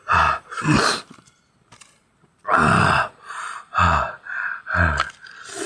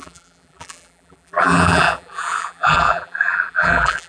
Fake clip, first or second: second